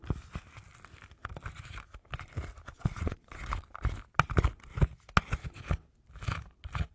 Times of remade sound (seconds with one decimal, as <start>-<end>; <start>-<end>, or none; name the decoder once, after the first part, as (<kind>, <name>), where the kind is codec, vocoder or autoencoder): 2.7-3.4 (vocoder, Vocos)